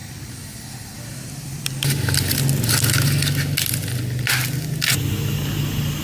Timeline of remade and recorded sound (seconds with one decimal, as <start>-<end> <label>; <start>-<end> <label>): 0.0-6.0 recorded